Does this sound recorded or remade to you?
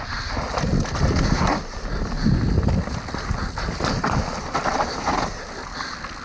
remade